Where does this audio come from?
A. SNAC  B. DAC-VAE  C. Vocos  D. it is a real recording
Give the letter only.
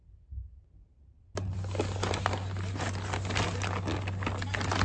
D